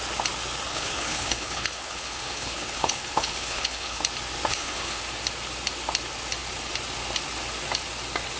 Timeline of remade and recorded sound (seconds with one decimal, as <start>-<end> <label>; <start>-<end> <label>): 0.0-0.7 recorded; 0.7-4.0 remade; 4.0-4.5 recorded; 4.5-5.0 remade; 5.0-8.4 recorded